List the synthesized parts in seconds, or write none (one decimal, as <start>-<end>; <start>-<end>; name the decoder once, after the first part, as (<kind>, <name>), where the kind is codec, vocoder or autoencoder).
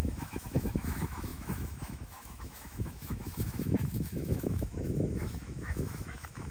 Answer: 0.0-6.5 (autoencoder, DAC-VAE)